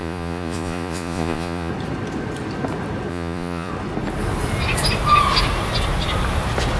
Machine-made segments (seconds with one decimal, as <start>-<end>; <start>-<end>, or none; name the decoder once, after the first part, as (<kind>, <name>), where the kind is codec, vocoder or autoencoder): 0.0-1.7 (vocoder, Vocos); 3.1-3.7